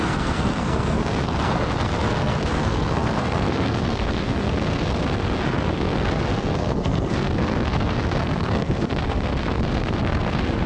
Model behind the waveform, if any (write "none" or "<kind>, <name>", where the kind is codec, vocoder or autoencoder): codec, SNAC